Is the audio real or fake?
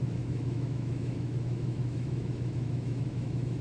fake